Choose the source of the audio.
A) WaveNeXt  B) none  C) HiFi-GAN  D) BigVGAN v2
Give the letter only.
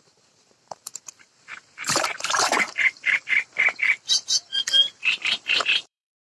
D